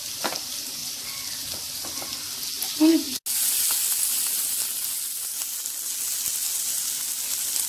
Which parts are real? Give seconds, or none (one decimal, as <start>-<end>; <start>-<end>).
0.0-7.7

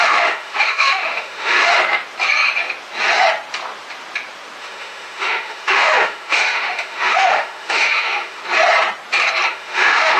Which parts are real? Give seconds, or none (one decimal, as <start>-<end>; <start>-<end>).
1.7-4.6; 8.4-9.5

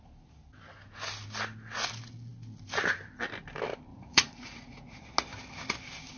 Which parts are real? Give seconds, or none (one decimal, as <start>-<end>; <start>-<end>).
0.0-3.9; 5.0-6.2

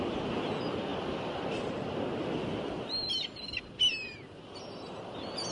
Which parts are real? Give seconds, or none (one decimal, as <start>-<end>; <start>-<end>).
0.0-5.5

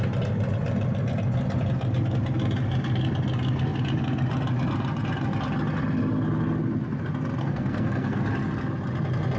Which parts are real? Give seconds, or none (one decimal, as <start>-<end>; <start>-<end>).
0.0-7.4; 8.2-9.4

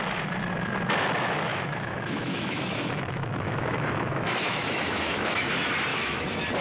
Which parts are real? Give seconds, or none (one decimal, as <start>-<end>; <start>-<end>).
0.0-1.5; 5.5-5.9

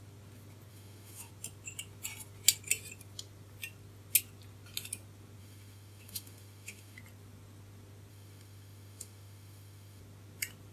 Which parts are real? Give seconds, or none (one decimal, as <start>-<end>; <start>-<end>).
0.0-0.7; 1.3-5.4; 7.0-8.1; 10.0-10.7